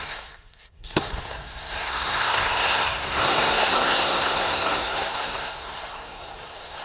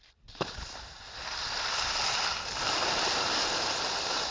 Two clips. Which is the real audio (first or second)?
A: second